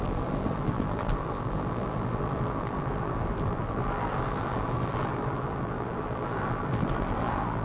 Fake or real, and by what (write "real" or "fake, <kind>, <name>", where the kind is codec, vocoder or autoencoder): fake, vocoder, BigVGAN v2